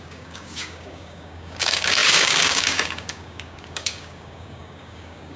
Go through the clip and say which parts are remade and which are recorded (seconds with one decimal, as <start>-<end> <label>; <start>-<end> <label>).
0.0-5.4 remade